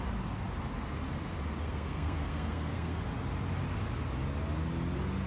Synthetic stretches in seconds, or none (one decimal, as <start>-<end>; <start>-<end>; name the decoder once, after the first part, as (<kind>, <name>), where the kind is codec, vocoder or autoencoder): 1.6-3.0 (codec, SNAC)